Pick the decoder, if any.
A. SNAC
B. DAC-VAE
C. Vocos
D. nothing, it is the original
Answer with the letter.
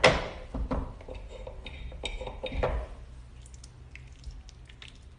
D